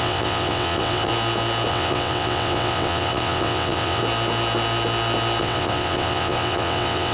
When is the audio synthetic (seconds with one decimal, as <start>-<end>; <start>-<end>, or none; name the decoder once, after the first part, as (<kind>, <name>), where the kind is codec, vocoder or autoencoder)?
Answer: 0.0-1.1 (vocoder, WaveNeXt); 1.7-4.0; 5.4-7.1